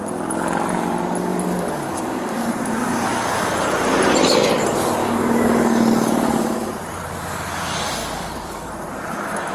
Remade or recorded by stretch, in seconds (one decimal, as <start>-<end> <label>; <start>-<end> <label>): 0.0-1.3 recorded; 1.3-2.5 remade; 2.5-5.0 recorded; 5.0-6.7 remade; 6.7-8.0 recorded; 8.0-8.7 remade; 8.7-9.5 recorded

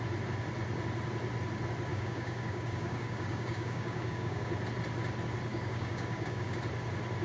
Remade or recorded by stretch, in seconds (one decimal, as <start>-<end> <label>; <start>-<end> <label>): 0.0-1.9 recorded; 1.9-4.5 remade; 4.5-5.5 recorded; 5.5-6.6 remade; 6.6-7.2 recorded